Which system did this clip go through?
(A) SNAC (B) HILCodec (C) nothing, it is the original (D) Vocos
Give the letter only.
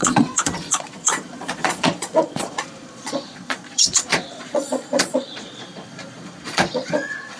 D